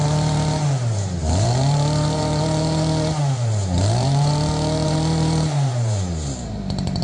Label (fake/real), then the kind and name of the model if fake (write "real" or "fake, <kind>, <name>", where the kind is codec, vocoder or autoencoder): fake, vocoder, BigVGAN v2